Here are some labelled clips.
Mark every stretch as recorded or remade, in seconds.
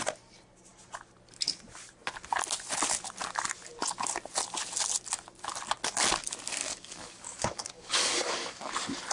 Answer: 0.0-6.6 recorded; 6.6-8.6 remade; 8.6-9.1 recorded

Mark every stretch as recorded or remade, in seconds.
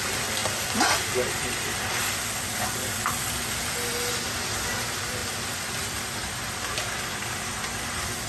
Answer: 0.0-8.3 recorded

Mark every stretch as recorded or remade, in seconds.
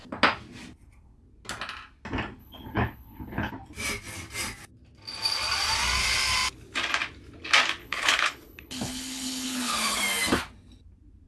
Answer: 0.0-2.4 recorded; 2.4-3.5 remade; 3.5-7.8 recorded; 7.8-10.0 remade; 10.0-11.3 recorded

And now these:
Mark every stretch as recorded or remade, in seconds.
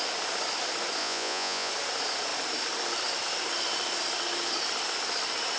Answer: 0.0-1.0 recorded; 1.0-1.7 remade; 1.7-5.6 recorded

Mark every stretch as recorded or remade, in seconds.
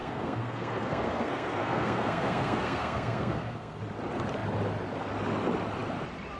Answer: 0.0-3.8 remade; 3.8-6.4 recorded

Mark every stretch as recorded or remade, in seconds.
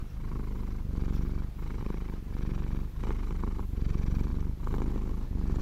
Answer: 0.0-1.8 recorded; 1.8-4.3 remade; 4.3-5.6 recorded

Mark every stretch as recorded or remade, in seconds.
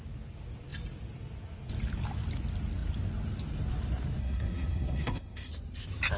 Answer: 0.0-4.2 recorded; 4.2-5.5 remade; 5.5-6.2 recorded